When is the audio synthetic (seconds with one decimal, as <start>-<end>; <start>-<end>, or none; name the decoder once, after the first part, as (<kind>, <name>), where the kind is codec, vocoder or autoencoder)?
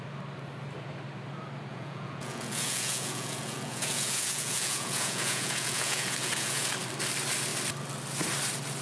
1.7-6.7 (vocoder, Vocos)